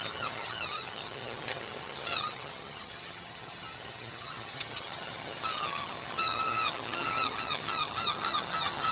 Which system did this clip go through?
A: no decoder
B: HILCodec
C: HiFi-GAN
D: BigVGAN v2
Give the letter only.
C